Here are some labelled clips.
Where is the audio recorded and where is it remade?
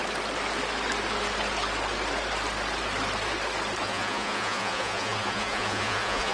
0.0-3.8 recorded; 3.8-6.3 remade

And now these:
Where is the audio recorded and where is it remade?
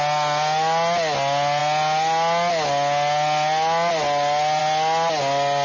0.0-5.6 recorded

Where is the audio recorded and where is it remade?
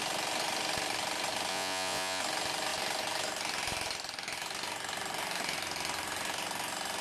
0.0-1.5 recorded; 1.5-2.2 remade; 2.2-7.0 recorded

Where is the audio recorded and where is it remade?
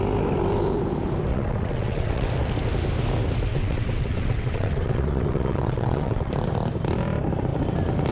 0.0-1.3 recorded; 1.3-2.3 remade; 2.3-3.5 recorded; 3.5-6.3 remade; 6.3-8.1 recorded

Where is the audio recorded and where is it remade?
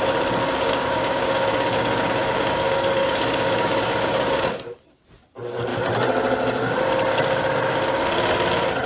0.0-0.4 recorded; 0.4-4.4 remade; 4.4-8.9 recorded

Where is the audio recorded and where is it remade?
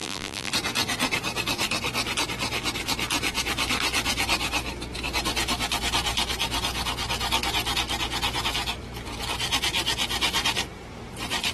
0.0-0.5 remade; 0.5-11.5 recorded